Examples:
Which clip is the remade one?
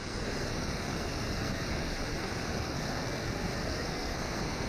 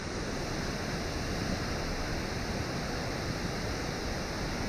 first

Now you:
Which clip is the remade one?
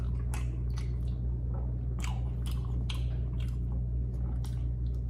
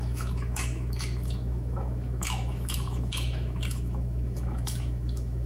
second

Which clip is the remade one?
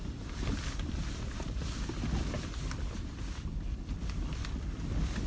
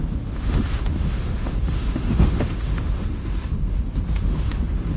second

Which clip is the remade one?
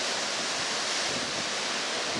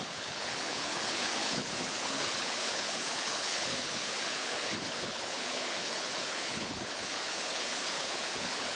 second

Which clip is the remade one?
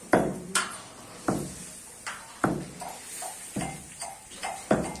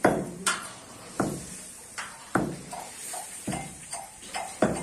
second